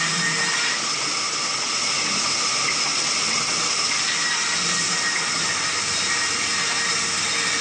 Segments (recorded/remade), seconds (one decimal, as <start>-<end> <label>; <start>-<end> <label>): 0.0-2.9 recorded; 2.9-3.7 remade; 3.7-7.6 recorded